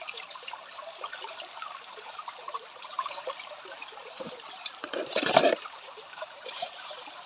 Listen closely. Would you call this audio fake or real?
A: fake